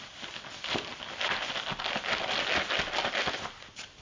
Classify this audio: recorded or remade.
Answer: recorded